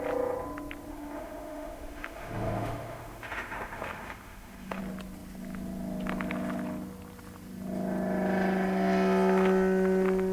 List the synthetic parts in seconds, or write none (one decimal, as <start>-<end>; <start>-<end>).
0.9-4.8